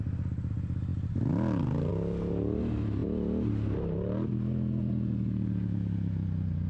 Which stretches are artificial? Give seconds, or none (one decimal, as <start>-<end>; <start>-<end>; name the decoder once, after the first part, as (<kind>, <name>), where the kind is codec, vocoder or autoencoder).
none